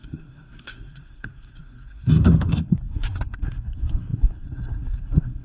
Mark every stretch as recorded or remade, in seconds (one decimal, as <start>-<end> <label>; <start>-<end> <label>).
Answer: 0.0-5.4 remade